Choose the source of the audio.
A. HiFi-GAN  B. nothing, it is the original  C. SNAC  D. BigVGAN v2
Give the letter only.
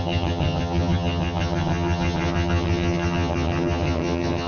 A